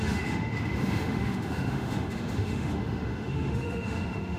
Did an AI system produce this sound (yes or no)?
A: yes